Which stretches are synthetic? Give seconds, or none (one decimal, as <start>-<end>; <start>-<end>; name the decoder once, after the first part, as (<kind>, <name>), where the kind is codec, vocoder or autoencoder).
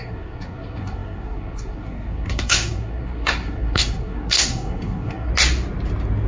0.0-5.3 (codec, SNAC)